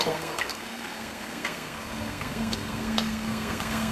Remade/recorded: remade